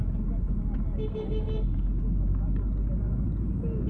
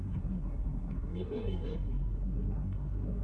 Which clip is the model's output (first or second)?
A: second